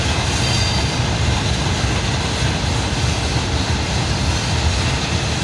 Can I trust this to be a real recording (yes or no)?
yes